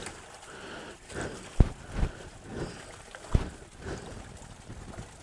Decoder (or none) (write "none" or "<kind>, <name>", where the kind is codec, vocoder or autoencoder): none